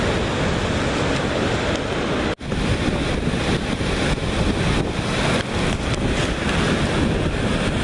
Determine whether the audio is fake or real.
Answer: real